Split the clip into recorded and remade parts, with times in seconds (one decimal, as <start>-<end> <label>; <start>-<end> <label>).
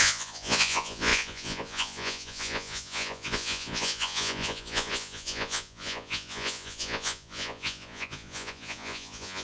0.0-9.4 remade